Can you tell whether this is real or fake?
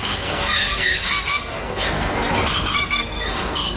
fake